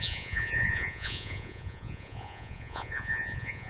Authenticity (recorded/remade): remade